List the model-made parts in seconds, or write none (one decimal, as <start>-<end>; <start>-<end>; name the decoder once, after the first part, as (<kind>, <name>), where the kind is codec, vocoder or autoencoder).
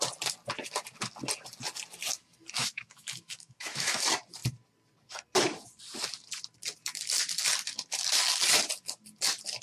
2.6-4.0 (autoencoder, DAC-VAE)